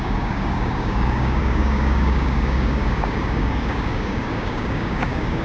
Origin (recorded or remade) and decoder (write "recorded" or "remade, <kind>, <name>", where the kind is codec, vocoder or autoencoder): remade, codec, DAC